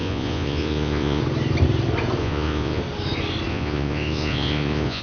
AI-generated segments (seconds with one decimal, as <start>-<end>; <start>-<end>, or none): 0.0-1.2; 2.2-2.8; 3.5-5.0